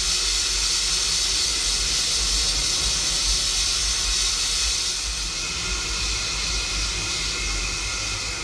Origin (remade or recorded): recorded